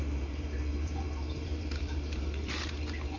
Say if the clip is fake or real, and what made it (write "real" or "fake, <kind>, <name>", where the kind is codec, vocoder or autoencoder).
fake, vocoder, BigVGAN v2